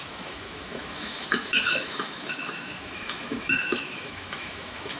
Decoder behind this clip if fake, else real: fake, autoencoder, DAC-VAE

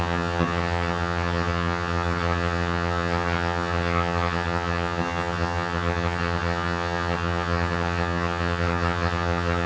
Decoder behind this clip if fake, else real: fake, vocoder, HiFi-GAN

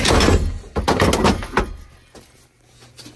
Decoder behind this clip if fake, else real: real